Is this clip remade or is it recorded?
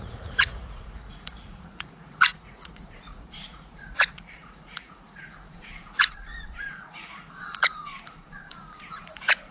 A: remade